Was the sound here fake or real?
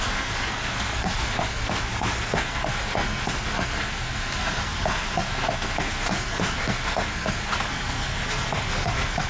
fake